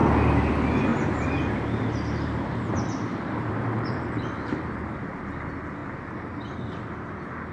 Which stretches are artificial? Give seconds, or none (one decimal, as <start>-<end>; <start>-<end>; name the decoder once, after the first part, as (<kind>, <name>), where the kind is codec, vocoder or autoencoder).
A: 0.9-5.0 (vocoder, BigVGAN v2)